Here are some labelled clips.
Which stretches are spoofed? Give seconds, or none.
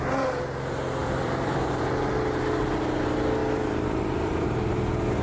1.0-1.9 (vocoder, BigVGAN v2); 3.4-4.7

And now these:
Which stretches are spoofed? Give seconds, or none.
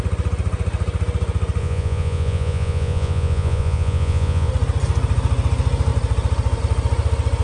1.6-4.5 (vocoder, Vocos)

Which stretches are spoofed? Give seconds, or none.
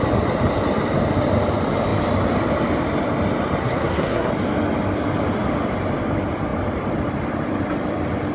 3.6-4.3 (codec, SNAC)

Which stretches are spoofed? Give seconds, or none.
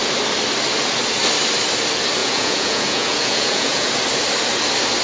2.2-3.9 (vocoder, Vocos)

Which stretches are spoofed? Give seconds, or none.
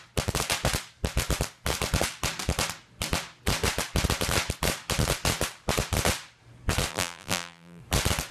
6.9-7.8 (vocoder, BigVGAN v2)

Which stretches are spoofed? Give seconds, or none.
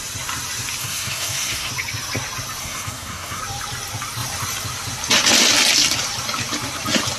0.8-1.7 (codec, SNAC); 2.6-3.4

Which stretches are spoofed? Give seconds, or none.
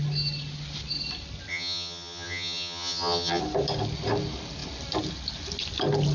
1.5-3.4 (vocoder, HiFi-GAN)